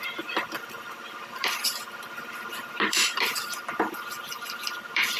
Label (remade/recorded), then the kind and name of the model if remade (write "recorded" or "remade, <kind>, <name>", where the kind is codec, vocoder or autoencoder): remade, vocoder, BigVGAN v2